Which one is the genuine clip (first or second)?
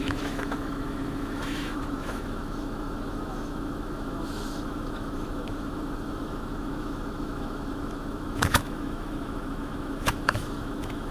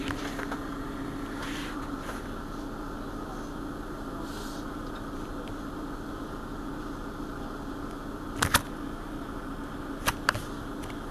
second